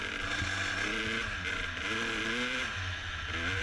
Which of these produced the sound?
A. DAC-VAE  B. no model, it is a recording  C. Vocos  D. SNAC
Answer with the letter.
B